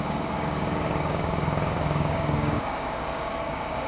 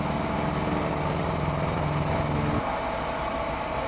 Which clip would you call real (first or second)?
second